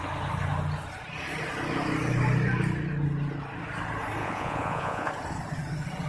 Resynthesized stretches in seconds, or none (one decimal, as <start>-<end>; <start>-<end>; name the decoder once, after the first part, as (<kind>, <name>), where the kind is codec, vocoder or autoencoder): 4.2-5.1 (vocoder, Vocos)